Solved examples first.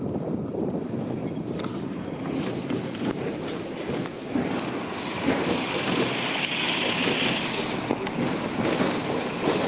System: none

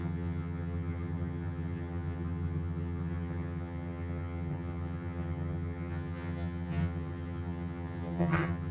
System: vocoder, HiFi-GAN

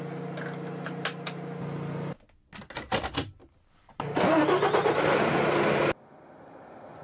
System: none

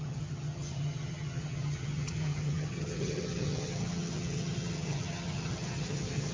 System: vocoder, HiFi-GAN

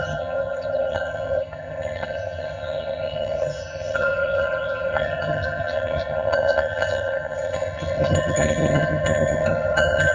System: vocoder, HiFi-GAN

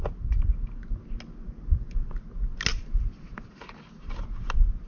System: none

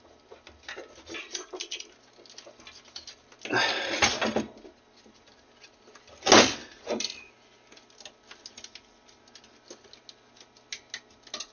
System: none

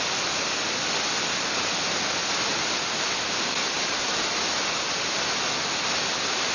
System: none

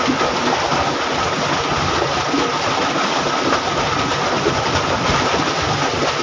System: none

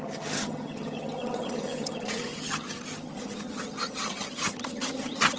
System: vocoder, HiFi-GAN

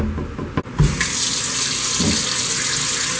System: none